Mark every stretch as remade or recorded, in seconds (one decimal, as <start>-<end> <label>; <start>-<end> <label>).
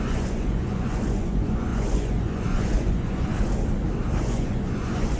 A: 0.0-3.3 remade; 3.3-4.2 recorded; 4.2-5.2 remade